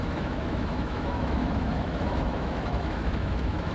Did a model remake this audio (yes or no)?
yes